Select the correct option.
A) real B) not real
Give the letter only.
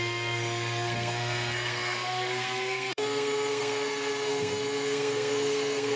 B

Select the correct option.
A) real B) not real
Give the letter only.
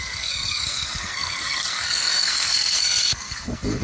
B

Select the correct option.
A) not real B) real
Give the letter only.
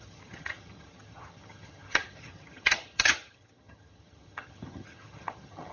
A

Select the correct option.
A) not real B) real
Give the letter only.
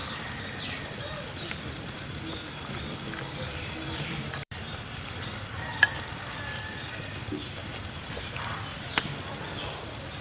A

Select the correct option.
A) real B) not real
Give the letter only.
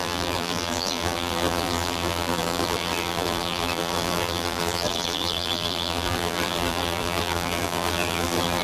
B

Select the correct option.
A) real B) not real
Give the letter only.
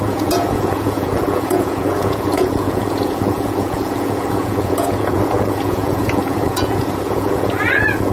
B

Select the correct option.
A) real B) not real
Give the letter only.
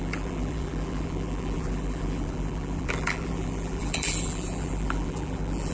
B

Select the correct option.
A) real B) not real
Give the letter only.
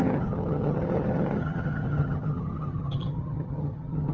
B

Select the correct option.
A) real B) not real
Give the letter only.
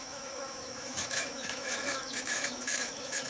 B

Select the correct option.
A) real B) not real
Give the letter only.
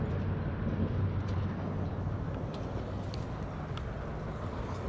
A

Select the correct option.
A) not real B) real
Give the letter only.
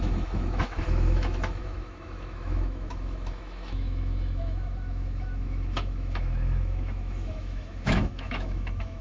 A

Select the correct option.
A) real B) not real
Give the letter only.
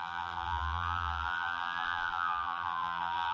B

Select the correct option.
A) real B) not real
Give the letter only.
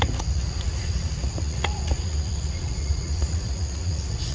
B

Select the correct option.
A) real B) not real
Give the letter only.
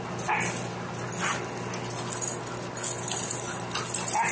A